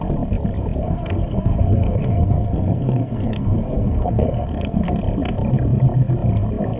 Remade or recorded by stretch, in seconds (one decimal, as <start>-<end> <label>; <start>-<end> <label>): 0.0-0.8 recorded; 0.8-4.9 remade; 4.9-6.8 recorded